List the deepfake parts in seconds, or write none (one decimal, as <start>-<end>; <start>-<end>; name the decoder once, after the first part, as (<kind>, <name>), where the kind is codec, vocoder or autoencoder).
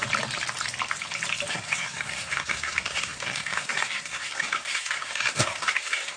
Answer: 1.5-6.2 (codec, SNAC)